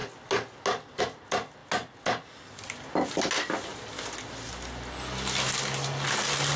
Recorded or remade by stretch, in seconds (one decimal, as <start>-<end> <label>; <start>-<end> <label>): 0.0-6.6 recorded